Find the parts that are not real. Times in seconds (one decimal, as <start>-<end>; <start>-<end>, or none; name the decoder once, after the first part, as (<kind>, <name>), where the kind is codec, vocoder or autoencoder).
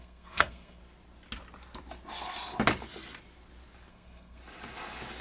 0.0-0.8 (codec, SNAC); 3.9-4.4